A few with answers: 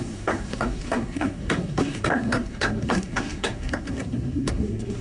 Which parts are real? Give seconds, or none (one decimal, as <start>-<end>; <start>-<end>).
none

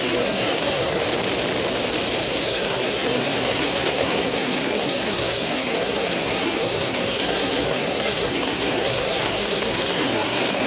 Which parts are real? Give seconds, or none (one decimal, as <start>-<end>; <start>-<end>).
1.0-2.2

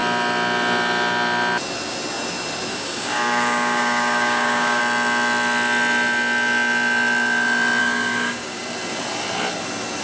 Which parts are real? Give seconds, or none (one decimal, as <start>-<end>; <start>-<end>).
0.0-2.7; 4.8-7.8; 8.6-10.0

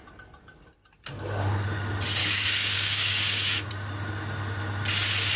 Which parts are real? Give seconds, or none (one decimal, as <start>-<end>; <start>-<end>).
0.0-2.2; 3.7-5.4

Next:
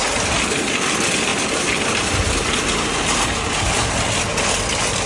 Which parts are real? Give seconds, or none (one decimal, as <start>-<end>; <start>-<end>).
0.0-5.1